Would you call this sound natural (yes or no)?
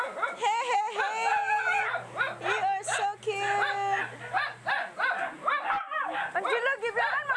yes